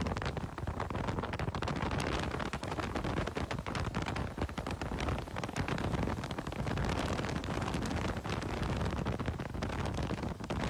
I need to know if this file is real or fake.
real